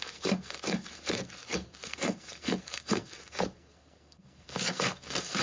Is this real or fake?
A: fake